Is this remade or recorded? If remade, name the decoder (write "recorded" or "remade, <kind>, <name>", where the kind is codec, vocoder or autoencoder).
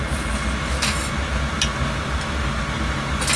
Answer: recorded